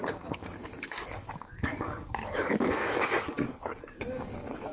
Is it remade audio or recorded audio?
remade